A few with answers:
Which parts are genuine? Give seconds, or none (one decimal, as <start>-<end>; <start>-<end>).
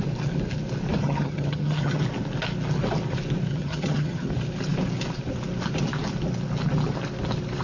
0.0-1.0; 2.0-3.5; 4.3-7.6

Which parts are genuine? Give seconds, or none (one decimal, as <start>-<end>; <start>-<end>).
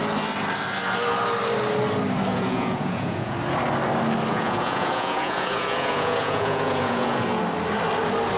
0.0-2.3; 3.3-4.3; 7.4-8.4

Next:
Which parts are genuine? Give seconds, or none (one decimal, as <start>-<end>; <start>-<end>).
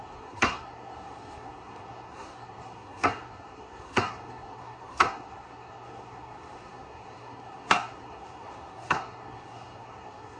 none